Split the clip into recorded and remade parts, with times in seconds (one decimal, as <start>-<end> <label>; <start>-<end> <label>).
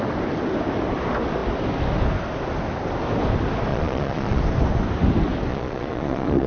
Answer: 0.0-3.7 recorded; 3.7-4.4 remade; 4.4-5.5 recorded; 5.5-6.5 remade